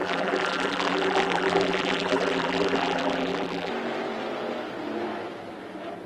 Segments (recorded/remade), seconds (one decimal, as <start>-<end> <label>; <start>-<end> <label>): 0.0-3.7 remade; 3.7-6.1 recorded